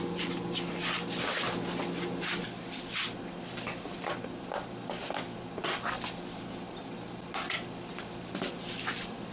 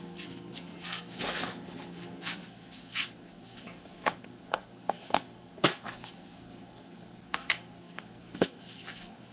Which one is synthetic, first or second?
second